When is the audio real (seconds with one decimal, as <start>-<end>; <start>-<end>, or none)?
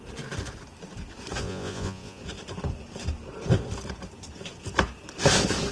0.0-1.4; 2.2-5.7